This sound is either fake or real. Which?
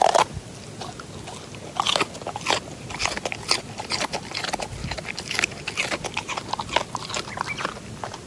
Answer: real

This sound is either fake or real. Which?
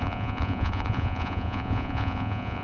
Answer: fake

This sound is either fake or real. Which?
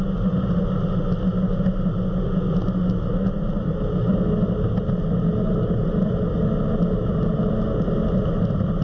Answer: real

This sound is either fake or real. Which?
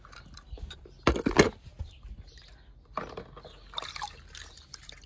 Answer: real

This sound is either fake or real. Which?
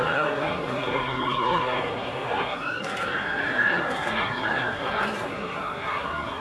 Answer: fake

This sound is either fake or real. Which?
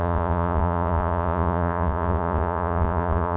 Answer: fake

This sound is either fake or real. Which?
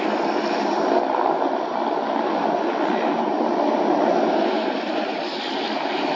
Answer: real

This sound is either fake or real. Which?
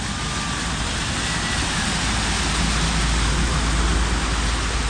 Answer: real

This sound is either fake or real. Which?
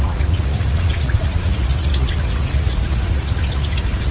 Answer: fake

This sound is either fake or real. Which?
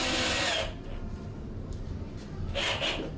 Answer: real